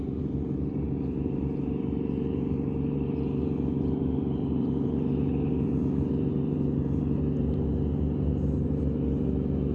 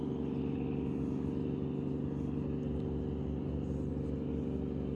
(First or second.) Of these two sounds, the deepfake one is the first